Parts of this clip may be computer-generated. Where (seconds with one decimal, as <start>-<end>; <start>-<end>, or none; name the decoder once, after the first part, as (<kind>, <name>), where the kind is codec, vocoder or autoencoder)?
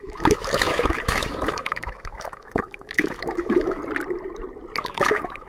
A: 0.0-3.8 (autoencoder, DAC-VAE); 4.8-5.5